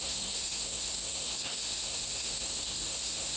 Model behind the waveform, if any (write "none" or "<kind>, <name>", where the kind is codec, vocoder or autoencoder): codec, SNAC